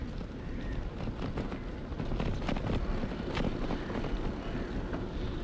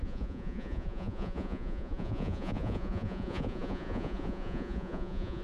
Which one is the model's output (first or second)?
second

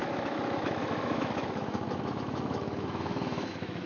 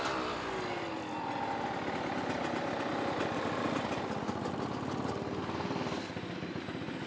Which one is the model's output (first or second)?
first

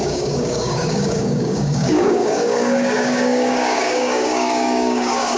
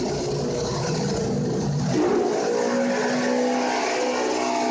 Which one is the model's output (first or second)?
first